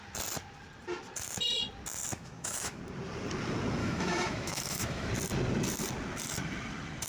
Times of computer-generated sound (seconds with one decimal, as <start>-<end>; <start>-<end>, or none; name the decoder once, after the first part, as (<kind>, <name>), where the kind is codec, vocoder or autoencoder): 2.1-2.8 (autoencoder, DAC-VAE); 3.8-5.1